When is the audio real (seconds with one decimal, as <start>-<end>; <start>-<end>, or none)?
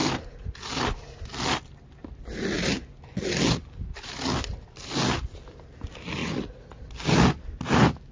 0.0-6.2; 6.8-8.1